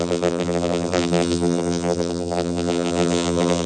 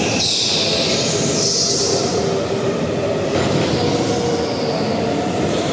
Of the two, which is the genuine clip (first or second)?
second